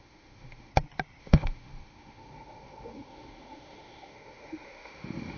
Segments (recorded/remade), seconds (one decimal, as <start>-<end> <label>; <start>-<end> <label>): 0.0-0.7 remade; 0.7-1.2 recorded; 1.2-5.4 remade